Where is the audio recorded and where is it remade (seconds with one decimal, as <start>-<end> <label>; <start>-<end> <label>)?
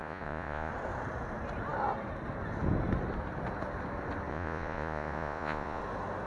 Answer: 0.0-0.7 remade; 0.7-4.3 recorded; 4.3-5.8 remade; 5.8-6.3 recorded